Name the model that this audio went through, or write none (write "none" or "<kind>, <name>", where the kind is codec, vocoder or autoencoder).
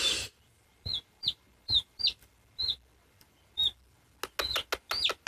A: none